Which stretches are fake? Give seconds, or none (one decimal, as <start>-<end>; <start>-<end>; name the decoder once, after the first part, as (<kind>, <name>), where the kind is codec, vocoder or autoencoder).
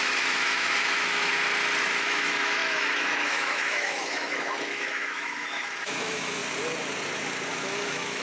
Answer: 0.0-1.3 (autoencoder, DAC-VAE); 1.8-6.4; 7.5-8.2